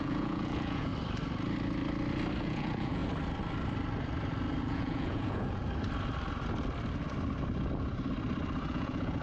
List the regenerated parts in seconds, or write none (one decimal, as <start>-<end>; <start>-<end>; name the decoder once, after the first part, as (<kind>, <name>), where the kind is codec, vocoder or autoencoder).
0.0-0.9 (vocoder, Vocos); 2.4-3.0; 4.6-5.6; 8.7-9.2